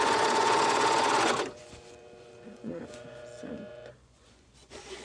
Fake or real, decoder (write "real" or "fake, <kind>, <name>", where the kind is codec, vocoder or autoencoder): fake, vocoder, Vocos